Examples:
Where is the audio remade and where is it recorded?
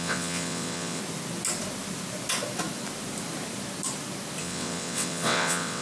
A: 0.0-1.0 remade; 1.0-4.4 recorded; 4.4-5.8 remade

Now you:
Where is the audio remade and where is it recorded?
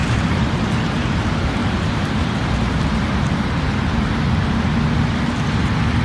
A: 0.0-0.6 remade; 0.6-1.6 recorded; 1.6-3.1 remade; 3.1-3.7 recorded; 3.7-4.6 remade; 4.6-6.0 recorded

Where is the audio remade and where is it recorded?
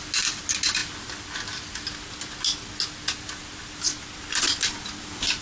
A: 0.0-5.4 recorded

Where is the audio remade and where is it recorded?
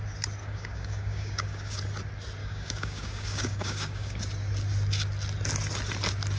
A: 0.0-0.4 recorded; 0.4-1.8 remade; 1.8-2.4 recorded; 2.4-4.2 remade; 4.2-6.4 recorded